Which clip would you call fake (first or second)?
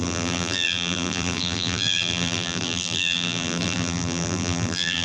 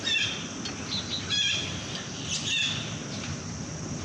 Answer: first